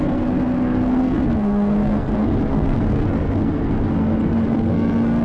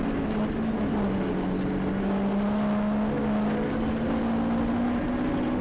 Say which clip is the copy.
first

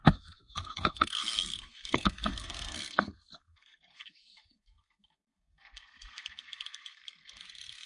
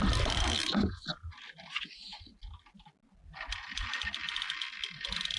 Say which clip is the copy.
first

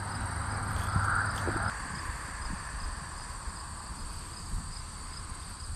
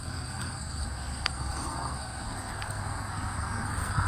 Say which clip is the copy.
second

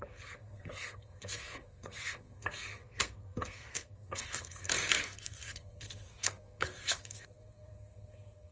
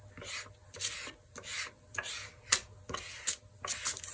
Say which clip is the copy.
first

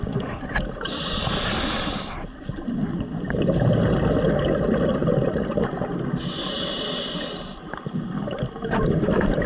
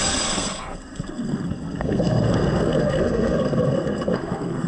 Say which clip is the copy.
second